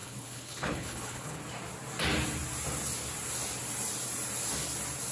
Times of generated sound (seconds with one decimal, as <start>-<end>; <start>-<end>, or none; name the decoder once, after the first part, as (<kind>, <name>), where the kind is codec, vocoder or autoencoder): 0.0-1.4 (codec, HILCodec)